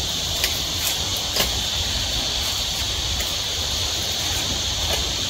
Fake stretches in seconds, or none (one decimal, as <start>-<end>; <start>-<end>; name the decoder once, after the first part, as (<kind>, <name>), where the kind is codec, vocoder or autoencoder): none